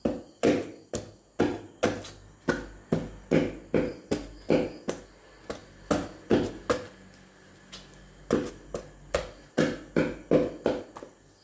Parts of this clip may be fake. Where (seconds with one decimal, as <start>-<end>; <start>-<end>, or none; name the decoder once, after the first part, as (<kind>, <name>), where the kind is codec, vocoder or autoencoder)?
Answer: none